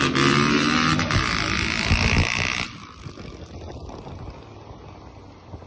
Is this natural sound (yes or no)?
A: yes